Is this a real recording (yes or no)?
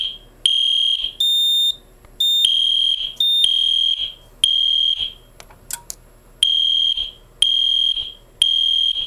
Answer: yes